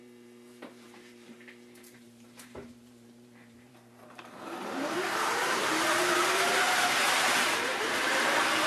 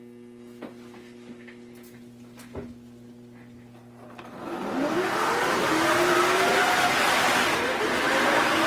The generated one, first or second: first